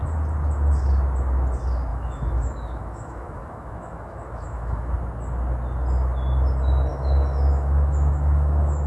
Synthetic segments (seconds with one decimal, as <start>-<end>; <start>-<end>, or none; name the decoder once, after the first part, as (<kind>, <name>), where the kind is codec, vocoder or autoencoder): 1.9-4.9 (autoencoder, DAC-VAE); 6.9-8.9